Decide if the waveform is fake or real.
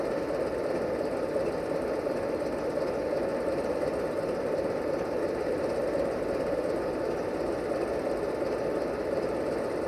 real